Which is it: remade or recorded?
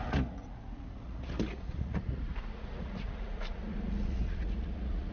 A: remade